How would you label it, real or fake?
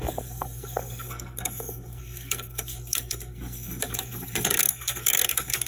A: fake